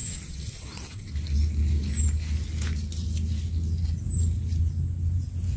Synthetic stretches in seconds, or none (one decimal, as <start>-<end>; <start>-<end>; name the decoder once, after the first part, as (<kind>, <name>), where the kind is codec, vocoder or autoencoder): 0.0-1.1 (vocoder, WaveNeXt)